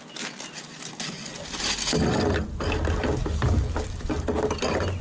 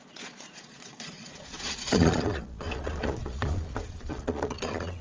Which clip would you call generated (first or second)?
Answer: second